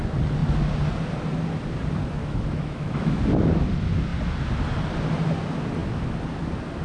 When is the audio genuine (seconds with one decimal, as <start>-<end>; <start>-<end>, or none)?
0.0-2.2; 3.2-6.8